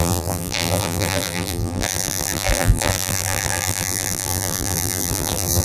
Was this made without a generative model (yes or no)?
no